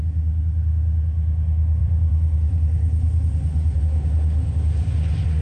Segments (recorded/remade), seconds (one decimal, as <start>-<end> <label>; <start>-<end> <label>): 0.0-1.8 recorded; 1.8-3.8 remade; 3.8-5.4 recorded